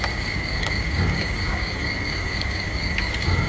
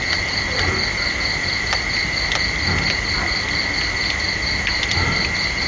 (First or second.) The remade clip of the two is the first